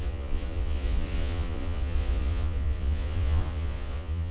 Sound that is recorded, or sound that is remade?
remade